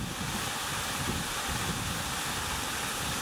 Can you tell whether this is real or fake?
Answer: real